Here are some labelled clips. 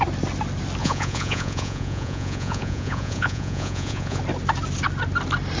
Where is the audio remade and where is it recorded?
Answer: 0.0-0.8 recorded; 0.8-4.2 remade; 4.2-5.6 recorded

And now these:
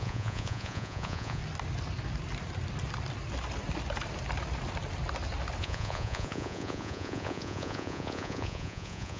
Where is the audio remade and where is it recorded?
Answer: 0.0-1.4 remade; 1.4-5.6 recorded; 5.6-9.2 remade

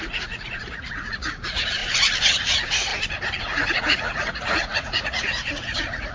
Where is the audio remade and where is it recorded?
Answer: 0.0-1.8 remade; 1.8-2.5 recorded; 2.5-2.9 remade; 2.9-3.4 recorded; 3.4-6.1 remade

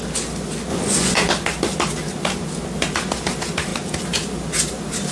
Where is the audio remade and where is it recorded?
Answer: 0.0-0.7 recorded; 0.7-1.3 remade; 1.3-5.1 recorded

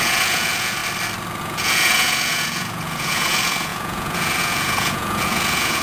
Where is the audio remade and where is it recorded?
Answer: 0.0-0.8 remade; 0.8-1.4 recorded; 1.4-5.8 remade

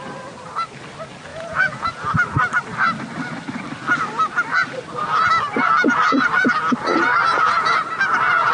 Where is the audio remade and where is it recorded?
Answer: 0.0-1.3 recorded; 1.3-1.9 remade; 1.9-7.3 recorded; 7.3-7.9 remade; 7.9-8.5 recorded

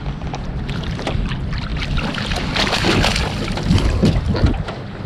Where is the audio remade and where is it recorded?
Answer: 0.0-5.1 recorded

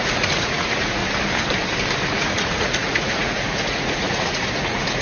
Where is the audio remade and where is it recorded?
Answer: 0.0-1.0 remade; 1.0-2.1 recorded; 2.1-5.0 remade